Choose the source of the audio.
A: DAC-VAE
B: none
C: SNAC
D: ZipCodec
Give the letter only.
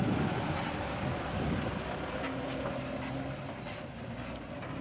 B